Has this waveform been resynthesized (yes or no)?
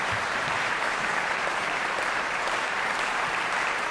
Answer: yes